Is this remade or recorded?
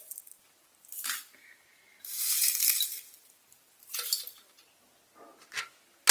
recorded